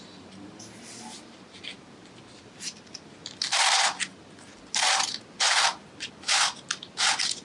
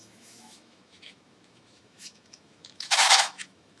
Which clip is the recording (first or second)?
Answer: first